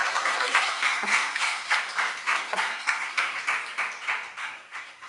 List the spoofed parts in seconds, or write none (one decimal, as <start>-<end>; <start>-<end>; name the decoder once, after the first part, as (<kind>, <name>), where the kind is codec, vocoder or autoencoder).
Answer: 0.0-1.8 (codec, SNAC); 2.2-3.4; 4.4-5.1